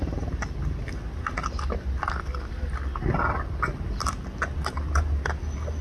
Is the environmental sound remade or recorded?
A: recorded